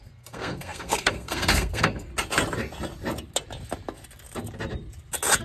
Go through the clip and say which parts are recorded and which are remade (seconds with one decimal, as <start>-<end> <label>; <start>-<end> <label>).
0.0-2.1 remade; 2.1-5.4 recorded